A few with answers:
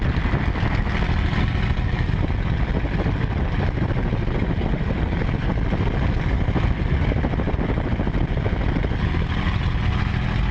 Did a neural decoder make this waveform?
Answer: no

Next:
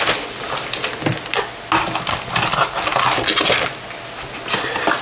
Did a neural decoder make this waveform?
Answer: no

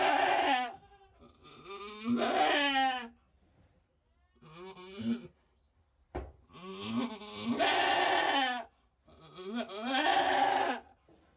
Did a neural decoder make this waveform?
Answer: no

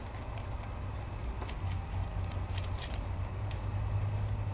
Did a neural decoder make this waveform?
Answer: no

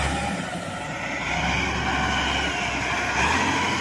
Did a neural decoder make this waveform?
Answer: no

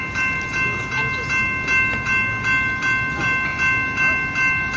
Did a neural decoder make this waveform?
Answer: no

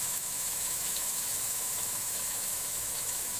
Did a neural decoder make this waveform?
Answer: yes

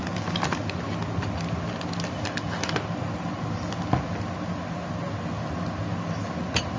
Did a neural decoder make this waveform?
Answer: no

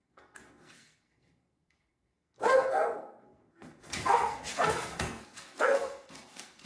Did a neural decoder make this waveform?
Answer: yes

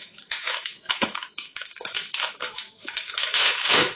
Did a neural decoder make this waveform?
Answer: yes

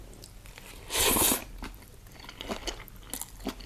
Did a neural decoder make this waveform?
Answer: no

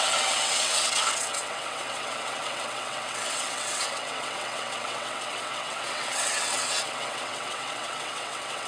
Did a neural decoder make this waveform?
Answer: yes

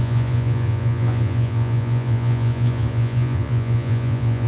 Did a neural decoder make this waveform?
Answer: yes